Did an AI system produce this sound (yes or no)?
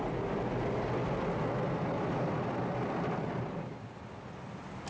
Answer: no